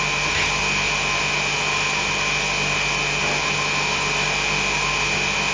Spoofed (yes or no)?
no